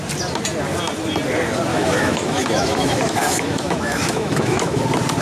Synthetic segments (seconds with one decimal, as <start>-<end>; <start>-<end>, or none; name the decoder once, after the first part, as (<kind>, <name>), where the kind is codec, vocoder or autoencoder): 1.7-4.8 (autoencoder, DAC-VAE)